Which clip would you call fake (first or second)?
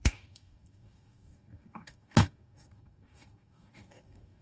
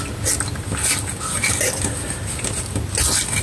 first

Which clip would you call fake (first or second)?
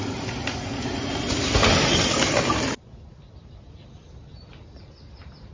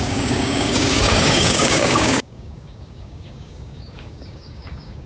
second